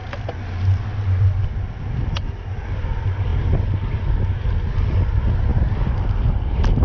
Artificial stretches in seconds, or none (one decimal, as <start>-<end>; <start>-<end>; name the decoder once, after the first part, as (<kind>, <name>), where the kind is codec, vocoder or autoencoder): none